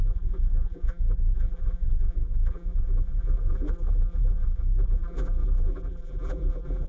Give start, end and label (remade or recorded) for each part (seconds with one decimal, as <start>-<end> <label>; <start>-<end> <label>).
0.0-6.9 remade